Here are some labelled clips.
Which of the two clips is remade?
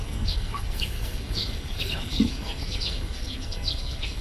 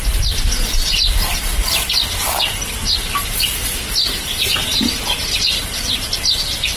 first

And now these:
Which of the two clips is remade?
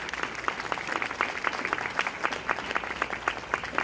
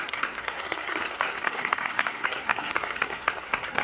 second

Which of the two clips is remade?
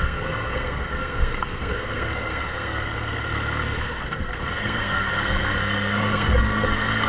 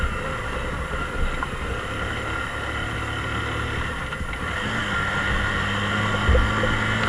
first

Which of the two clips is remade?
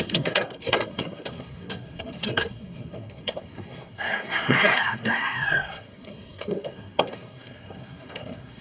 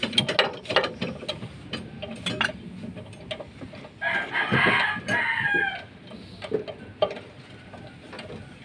first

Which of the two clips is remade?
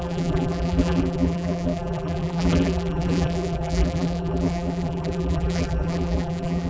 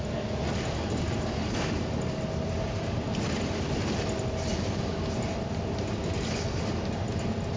first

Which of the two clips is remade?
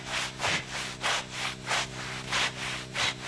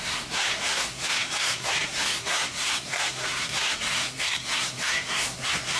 second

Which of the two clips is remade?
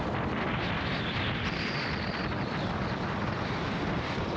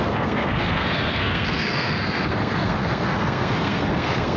second